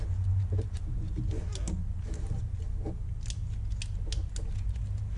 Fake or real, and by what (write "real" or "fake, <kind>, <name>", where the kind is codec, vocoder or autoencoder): real